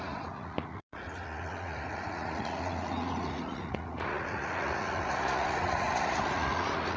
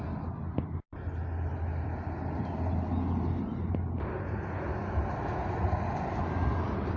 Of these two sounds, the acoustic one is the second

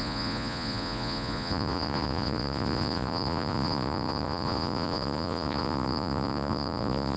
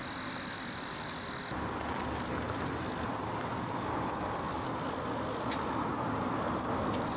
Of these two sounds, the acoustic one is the second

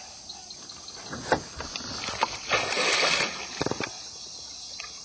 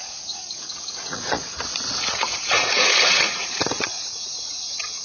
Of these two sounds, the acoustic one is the first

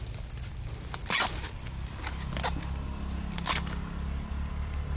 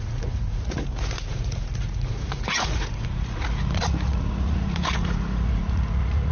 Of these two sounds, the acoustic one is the first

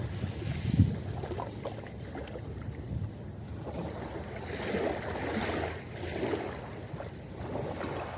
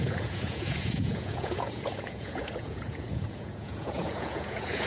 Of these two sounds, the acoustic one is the first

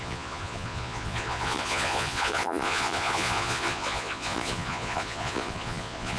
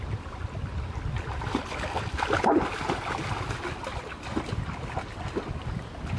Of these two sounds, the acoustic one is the second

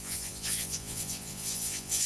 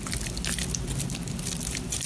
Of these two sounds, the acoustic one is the second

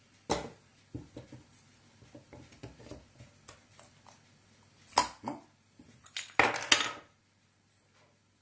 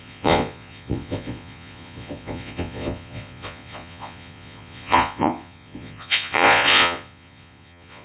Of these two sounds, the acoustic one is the first